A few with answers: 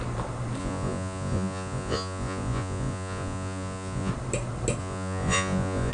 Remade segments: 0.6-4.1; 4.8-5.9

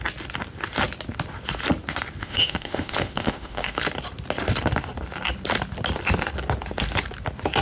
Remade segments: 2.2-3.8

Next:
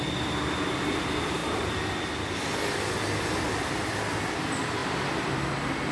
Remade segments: none